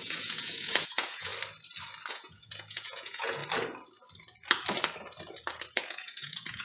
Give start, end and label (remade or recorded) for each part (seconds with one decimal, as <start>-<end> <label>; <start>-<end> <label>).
0.0-1.3 remade; 1.3-2.1 recorded; 2.1-3.4 remade; 3.4-5.7 recorded; 5.7-6.6 remade